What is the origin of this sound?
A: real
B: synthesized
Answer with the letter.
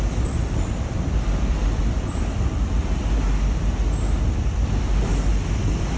B